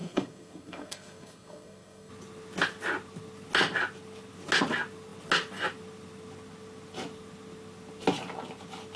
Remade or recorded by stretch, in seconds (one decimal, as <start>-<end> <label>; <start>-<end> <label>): 0.0-2.1 remade; 2.1-9.0 recorded